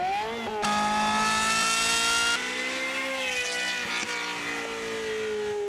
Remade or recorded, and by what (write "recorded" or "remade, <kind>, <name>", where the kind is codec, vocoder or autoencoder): recorded